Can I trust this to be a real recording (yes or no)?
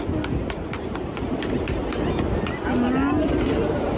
yes